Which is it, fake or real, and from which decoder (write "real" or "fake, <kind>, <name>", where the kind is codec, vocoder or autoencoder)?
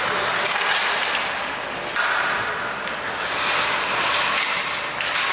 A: real